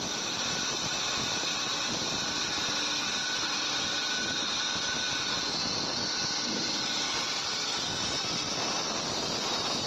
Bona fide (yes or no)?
yes